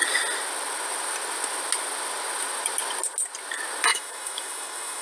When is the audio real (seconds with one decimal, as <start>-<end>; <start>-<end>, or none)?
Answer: 0.0-3.9